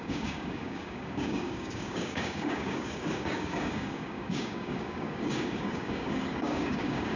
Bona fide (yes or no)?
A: no